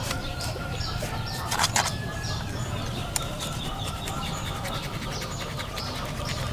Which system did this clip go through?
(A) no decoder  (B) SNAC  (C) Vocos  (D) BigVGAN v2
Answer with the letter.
D